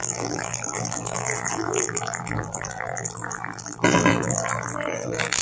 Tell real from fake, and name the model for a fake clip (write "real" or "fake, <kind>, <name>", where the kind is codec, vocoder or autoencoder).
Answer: fake, vocoder, BigVGAN v2